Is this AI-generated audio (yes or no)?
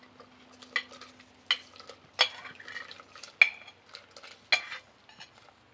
no